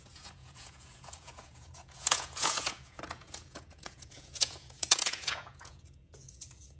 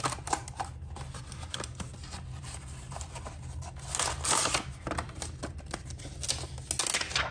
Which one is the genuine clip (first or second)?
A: second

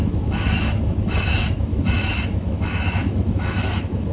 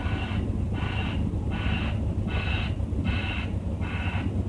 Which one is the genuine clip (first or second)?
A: second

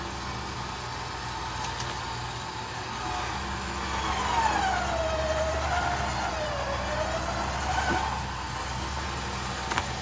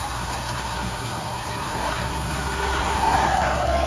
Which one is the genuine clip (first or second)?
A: first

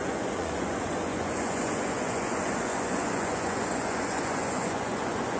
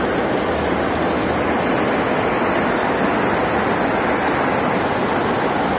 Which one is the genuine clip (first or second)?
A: second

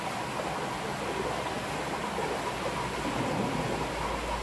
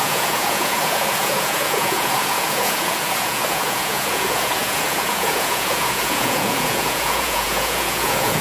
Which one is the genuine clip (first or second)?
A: first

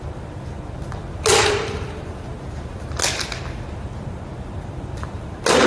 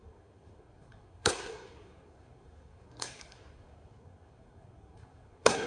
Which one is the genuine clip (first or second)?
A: first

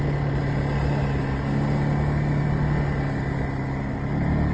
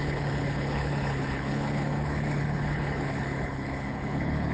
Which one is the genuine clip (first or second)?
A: first